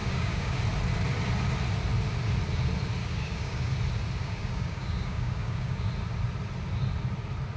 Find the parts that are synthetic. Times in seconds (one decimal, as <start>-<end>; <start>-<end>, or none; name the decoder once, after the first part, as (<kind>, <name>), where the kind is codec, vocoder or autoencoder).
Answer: 0.0-0.6 (codec, DAC); 3.0-3.7; 4.2-5.9